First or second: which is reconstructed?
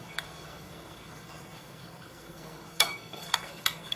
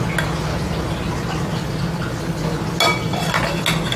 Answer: first